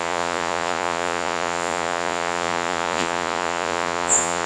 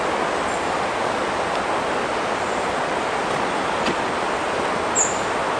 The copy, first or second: first